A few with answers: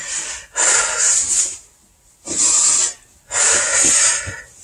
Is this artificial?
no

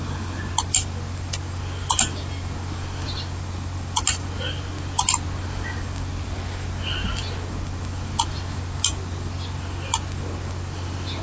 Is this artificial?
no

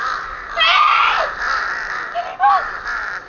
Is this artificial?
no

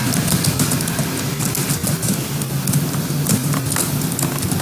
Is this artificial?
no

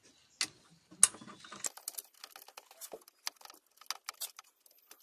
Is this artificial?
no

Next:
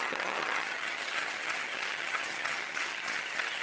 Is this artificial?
yes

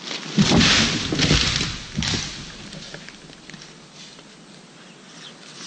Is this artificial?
no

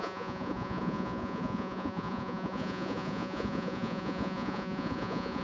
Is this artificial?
yes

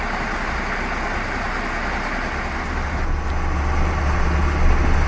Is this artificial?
no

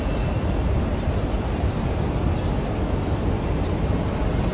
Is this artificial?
yes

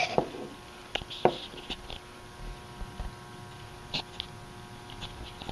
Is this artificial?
no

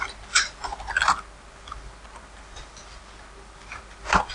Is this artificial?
no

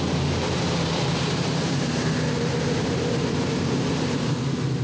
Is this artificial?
yes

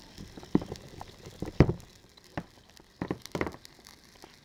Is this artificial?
no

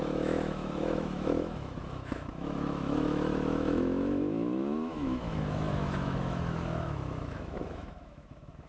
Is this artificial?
yes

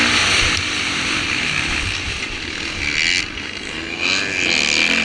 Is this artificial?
no